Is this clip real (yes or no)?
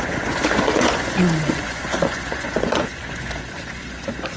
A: no